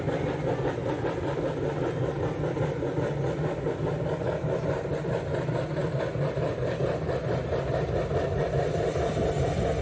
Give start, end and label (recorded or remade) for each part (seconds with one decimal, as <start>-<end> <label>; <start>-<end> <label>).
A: 0.0-9.8 recorded